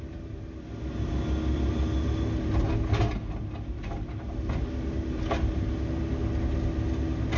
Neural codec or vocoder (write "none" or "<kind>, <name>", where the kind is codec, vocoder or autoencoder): none